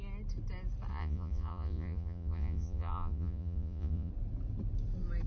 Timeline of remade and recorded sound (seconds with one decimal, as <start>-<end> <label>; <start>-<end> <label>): 0.0-0.9 recorded; 0.9-4.1 remade; 4.1-5.3 recorded